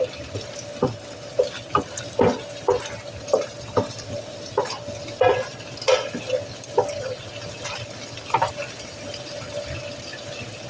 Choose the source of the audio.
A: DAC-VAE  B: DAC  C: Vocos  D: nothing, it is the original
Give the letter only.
D